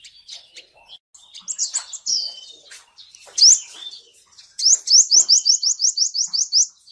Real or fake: real